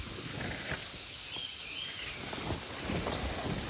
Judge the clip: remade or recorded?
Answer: recorded